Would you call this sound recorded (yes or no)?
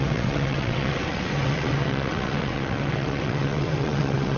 no